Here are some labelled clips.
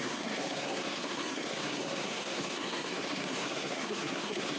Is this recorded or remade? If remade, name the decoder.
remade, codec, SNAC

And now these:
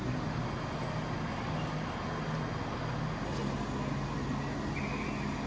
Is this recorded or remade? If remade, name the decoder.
recorded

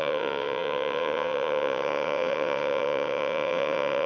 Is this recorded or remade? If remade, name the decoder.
remade, vocoder, WaveNeXt